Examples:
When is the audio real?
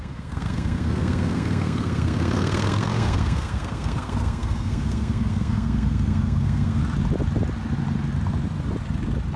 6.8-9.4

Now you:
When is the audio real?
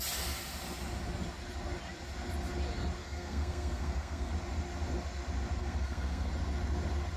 0.0-3.0; 4.3-5.6; 6.3-7.2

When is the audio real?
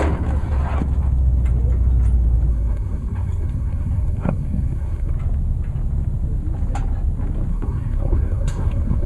0.0-2.5; 5.1-7.5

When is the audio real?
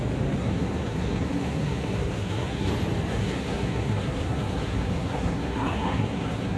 0.0-0.4; 2.7-3.1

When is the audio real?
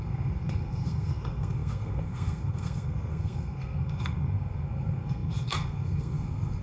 none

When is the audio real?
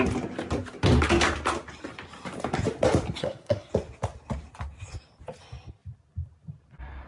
0.0-3.2; 3.7-7.1